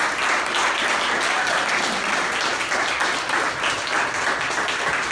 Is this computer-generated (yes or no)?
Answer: no